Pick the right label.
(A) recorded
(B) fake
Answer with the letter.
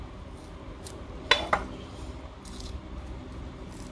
A